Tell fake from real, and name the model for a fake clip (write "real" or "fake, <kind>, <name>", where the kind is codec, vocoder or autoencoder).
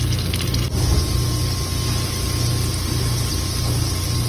real